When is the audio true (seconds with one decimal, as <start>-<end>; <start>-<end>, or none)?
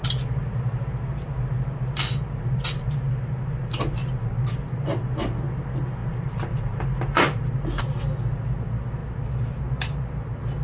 0.0-6.0; 7.8-10.6